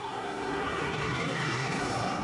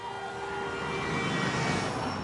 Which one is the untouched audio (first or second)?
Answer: second